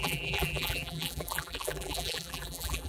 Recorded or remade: remade